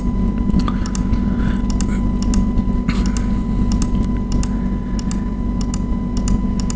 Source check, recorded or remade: recorded